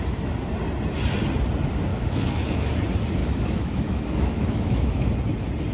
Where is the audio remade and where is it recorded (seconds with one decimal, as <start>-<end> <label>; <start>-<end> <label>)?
0.0-1.9 recorded; 1.9-2.7 remade; 2.7-3.2 recorded; 3.2-5.1 remade; 5.1-5.7 recorded